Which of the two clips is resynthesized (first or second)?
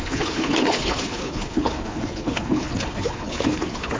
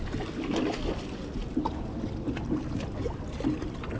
first